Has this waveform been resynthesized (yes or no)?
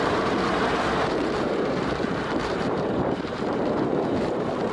yes